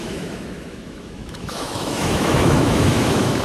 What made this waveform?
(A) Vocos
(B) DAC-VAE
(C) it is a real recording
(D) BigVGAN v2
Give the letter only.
B